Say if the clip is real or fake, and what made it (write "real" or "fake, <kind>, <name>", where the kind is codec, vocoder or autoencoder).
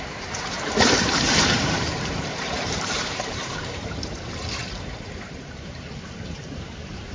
fake, vocoder, BigVGAN v2